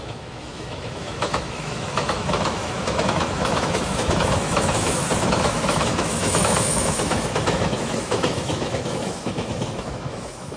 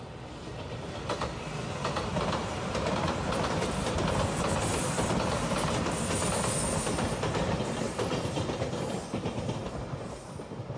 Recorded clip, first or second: second